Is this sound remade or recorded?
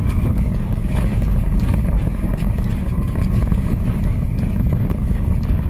remade